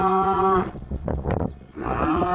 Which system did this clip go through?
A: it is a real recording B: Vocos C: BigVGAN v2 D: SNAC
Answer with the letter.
B